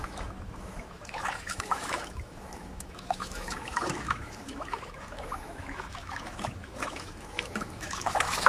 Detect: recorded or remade remade